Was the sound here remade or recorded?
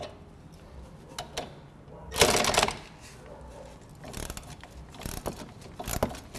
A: recorded